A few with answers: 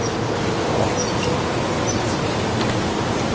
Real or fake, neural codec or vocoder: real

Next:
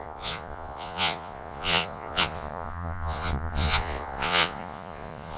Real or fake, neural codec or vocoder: fake, vocoder, Vocos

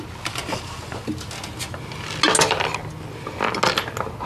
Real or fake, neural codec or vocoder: real